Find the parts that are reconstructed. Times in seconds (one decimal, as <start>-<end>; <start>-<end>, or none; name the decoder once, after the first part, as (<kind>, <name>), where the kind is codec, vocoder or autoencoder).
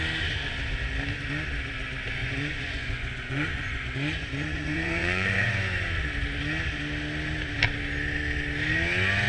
2.2-5.5 (vocoder, Vocos)